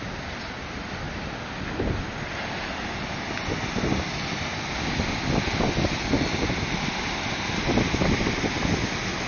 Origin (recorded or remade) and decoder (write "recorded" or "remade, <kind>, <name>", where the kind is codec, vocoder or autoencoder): recorded